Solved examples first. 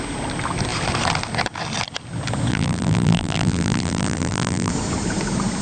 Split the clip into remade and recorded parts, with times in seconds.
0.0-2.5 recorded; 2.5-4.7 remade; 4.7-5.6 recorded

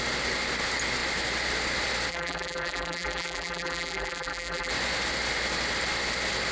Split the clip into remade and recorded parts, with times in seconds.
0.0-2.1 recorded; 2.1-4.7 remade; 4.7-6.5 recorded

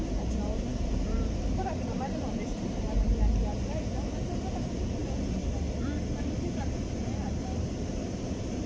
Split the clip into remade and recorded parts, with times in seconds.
0.0-5.0 remade; 5.0-7.9 recorded; 7.9-8.7 remade